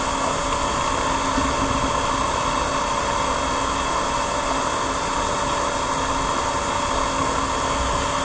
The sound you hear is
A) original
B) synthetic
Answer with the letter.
A